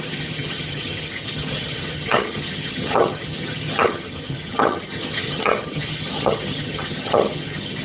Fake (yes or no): yes